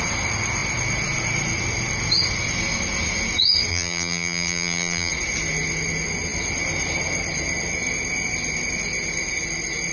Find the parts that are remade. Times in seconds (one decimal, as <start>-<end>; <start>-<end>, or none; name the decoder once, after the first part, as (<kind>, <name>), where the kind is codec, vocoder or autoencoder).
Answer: 3.7-5.1 (vocoder, BigVGAN v2)

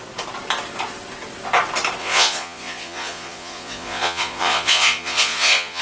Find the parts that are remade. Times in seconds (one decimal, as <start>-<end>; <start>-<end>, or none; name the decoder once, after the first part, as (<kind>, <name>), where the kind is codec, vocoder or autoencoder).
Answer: 2.0-5.8 (vocoder, Vocos)

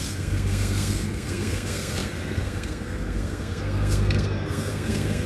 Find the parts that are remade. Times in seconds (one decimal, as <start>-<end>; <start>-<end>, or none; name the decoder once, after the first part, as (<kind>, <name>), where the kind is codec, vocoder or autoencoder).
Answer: 0.0-5.3 (codec, SNAC)

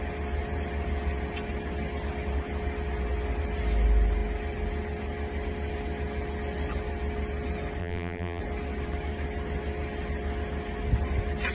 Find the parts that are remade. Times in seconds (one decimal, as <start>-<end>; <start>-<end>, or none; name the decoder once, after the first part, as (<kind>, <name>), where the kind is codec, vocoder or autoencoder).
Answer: 7.8-8.4 (vocoder, BigVGAN v2)

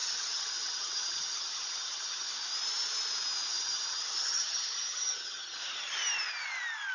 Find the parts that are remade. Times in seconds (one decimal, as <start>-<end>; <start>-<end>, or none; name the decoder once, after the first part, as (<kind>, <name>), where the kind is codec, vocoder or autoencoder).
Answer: 0.0-2.3 (vocoder, HiFi-GAN); 3.5-5.9